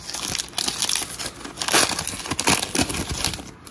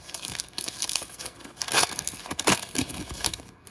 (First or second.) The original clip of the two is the first